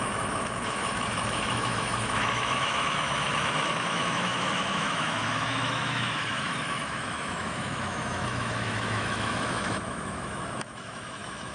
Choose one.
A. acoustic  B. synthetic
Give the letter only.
B